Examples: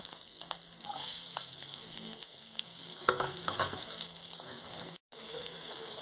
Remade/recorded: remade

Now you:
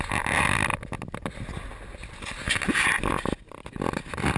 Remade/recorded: recorded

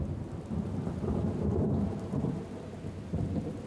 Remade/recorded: recorded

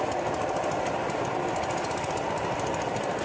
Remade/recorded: recorded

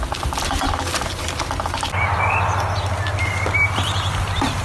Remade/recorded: recorded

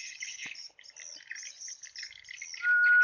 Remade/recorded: recorded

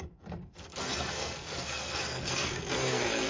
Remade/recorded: remade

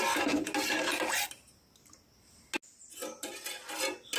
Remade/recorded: recorded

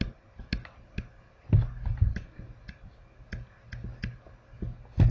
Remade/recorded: recorded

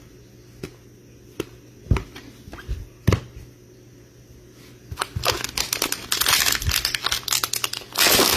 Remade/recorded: recorded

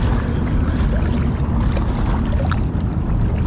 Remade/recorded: recorded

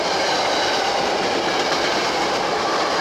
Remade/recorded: recorded